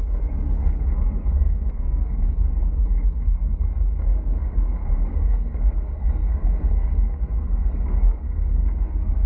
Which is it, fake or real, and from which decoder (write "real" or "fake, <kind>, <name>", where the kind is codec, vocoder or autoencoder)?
fake, codec, SNAC